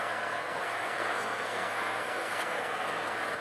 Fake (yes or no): yes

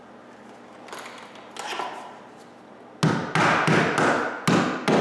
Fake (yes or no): no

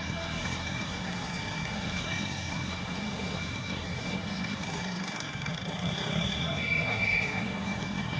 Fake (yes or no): yes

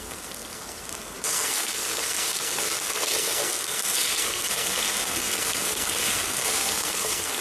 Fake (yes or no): yes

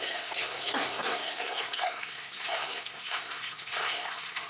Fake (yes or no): yes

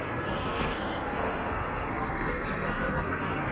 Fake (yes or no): yes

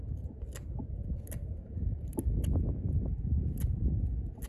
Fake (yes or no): no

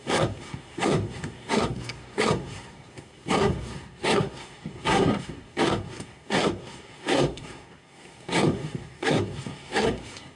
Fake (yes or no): yes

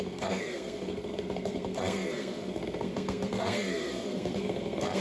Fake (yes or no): yes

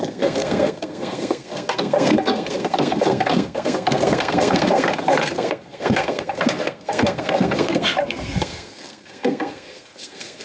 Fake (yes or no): yes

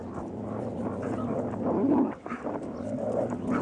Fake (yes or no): no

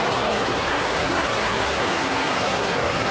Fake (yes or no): yes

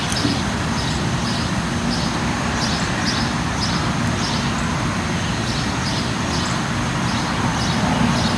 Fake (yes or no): no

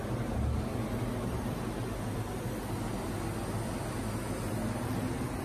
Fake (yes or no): no